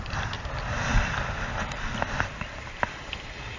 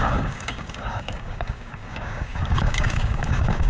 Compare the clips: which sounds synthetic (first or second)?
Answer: second